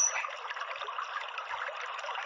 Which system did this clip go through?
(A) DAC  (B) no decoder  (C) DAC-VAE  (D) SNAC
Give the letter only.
B